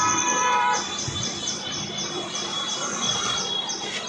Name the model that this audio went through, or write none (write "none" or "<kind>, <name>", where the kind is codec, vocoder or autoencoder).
vocoder, BigVGAN v2